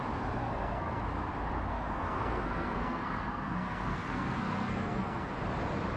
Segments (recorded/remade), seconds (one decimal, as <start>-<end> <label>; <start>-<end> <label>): 0.0-0.4 recorded; 0.4-1.0 remade; 1.0-1.7 recorded; 1.7-5.3 remade; 5.3-6.0 recorded